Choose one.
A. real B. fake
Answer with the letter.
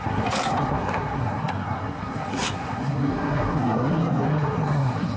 B